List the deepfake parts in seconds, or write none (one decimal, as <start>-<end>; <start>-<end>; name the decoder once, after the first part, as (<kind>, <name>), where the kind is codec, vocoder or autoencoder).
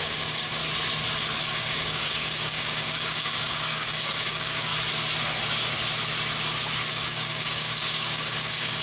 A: 0.0-0.6 (codec, DAC); 1.4-4.7; 6.9-8.8